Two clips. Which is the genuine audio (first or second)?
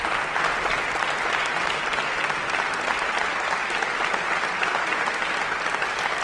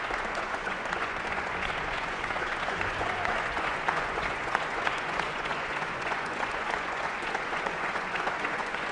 first